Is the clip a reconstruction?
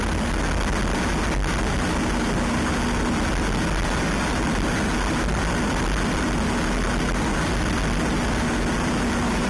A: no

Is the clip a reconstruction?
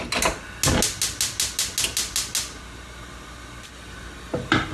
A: no